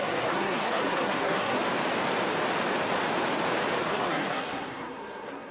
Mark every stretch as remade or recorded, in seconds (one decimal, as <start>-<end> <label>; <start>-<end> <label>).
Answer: 0.0-1.6 remade; 1.6-3.8 recorded; 3.8-5.5 remade